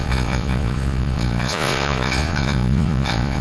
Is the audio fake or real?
fake